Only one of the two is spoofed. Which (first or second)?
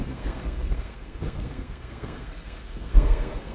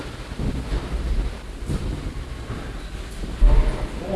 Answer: first